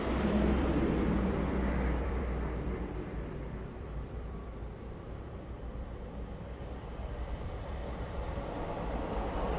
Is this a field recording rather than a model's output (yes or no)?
no